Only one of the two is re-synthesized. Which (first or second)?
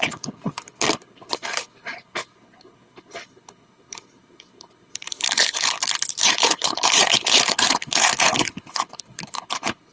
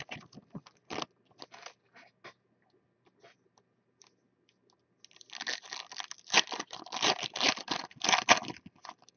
first